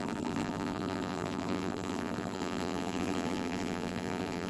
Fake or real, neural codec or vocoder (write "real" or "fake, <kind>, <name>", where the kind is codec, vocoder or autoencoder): fake, vocoder, BigVGAN v2